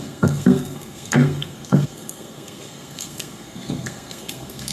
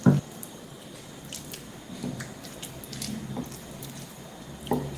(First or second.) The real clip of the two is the second